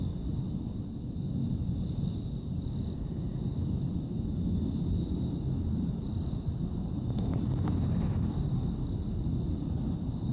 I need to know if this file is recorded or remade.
recorded